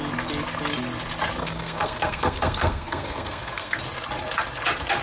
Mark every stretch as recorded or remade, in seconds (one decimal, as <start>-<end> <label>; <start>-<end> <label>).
0.0-1.4 recorded; 1.4-3.8 remade; 3.8-5.0 recorded